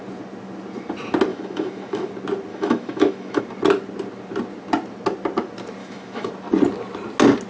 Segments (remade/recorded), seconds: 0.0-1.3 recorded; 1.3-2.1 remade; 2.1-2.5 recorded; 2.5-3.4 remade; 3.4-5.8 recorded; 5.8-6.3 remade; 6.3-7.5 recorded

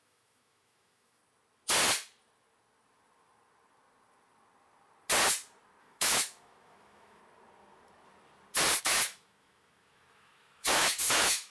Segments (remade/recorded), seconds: 0.0-1.2 remade; 1.2-5.8 recorded; 5.8-7.2 remade; 7.2-8.8 recorded; 8.8-11.5 remade

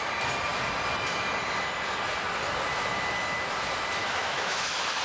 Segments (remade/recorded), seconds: 0.0-4.0 recorded; 4.0-5.0 remade

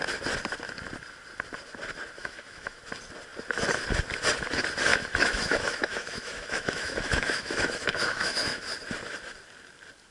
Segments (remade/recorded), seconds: 0.0-2.2 recorded; 2.2-2.8 remade; 2.8-4.9 recorded; 4.9-8.6 remade; 8.6-10.1 recorded

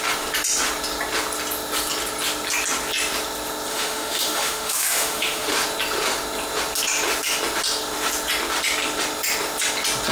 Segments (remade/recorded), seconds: 0.0-3.7 recorded; 3.7-5.5 remade; 5.5-10.1 recorded

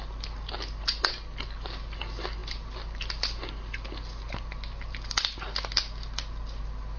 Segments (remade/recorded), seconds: 0.0-7.0 recorded

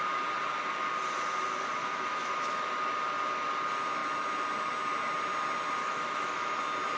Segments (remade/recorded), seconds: 0.0-1.8 recorded; 1.8-2.7 remade; 2.7-5.8 recorded; 5.8-6.6 remade; 6.6-7.0 recorded